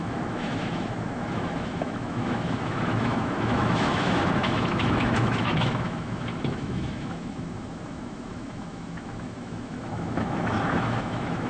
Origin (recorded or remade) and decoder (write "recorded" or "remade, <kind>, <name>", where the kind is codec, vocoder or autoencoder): remade, autoencoder, DAC-VAE